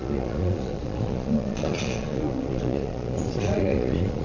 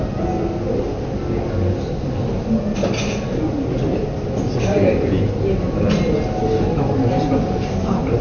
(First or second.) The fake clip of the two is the first